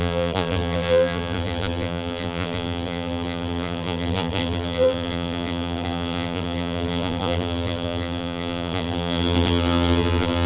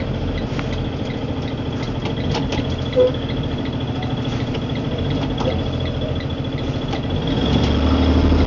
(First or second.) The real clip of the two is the second